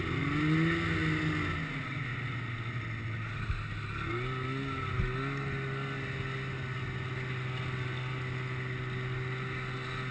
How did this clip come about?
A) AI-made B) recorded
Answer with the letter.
B